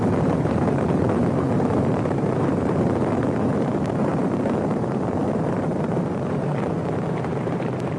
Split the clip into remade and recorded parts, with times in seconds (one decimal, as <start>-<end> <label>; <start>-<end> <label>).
0.0-8.0 remade